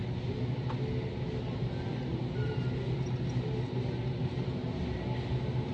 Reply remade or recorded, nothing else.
recorded